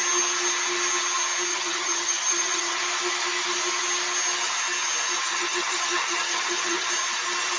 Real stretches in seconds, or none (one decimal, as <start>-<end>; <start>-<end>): 0.0-1.5; 2.8-5.3; 6.9-7.6